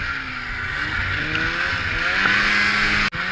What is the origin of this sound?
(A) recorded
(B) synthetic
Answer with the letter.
A